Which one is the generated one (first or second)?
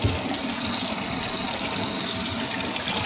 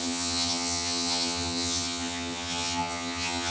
second